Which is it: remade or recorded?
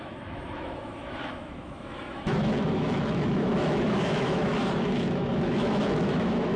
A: remade